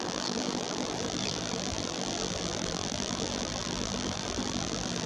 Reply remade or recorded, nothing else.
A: remade